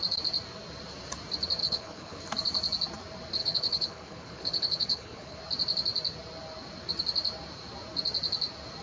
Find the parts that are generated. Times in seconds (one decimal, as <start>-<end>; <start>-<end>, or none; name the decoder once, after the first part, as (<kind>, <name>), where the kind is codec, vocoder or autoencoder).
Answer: 1.6-2.2 (codec, HILCodec); 3.4-5.4